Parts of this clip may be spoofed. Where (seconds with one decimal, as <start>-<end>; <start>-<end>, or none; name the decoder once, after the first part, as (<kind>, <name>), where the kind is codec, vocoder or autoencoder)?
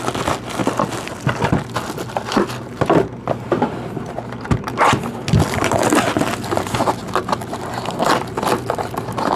none